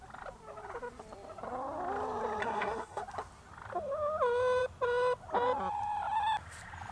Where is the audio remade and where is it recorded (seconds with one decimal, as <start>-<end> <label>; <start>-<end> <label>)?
0.0-2.4 recorded; 2.4-3.0 remade; 3.0-6.9 recorded